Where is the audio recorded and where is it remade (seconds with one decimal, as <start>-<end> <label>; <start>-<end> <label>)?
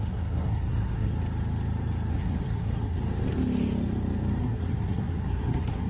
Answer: 0.0-1.1 remade; 1.1-2.1 recorded; 2.1-3.0 remade; 3.0-4.4 recorded; 4.4-5.9 remade